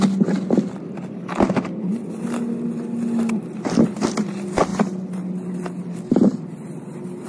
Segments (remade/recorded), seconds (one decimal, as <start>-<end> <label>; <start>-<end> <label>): 0.0-7.3 recorded